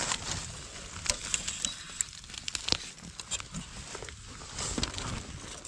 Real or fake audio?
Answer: real